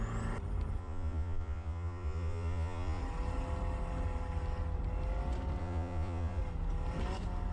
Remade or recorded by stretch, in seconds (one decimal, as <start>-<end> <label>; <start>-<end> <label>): 0.0-0.8 recorded; 0.8-3.0 remade; 3.0-5.6 recorded; 5.6-6.4 remade; 6.4-7.5 recorded